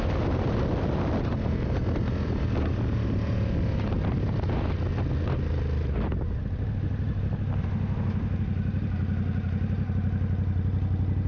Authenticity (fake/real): real